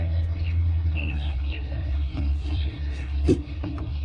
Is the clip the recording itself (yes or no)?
no